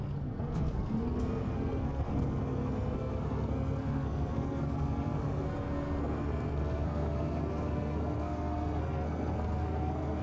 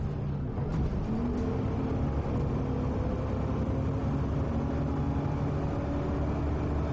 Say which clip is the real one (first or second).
second